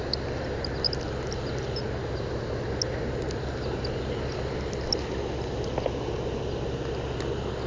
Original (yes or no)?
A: yes